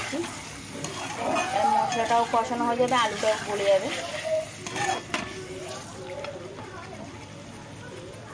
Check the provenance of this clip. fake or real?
real